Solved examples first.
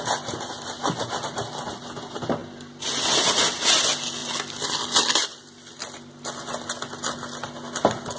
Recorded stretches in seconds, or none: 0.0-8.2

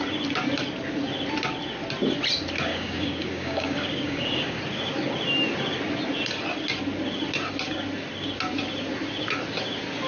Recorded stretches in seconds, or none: 0.0-2.7; 4.6-10.1

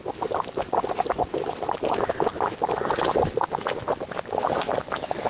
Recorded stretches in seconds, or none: 2.3-4.7

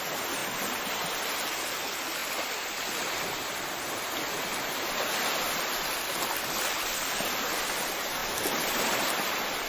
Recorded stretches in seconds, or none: 0.0-9.7

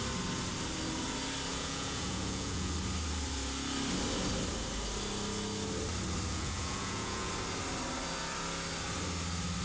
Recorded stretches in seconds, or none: 0.0-1.5; 2.7-6.3; 7.3-9.6

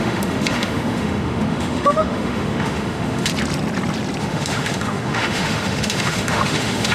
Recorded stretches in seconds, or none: 3.3-4.2